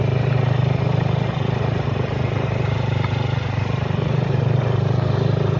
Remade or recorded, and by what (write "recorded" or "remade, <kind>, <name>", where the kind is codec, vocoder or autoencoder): remade, vocoder, BigVGAN v2